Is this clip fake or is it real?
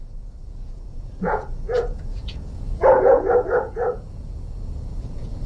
fake